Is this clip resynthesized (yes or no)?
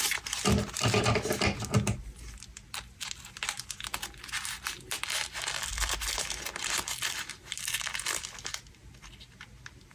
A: no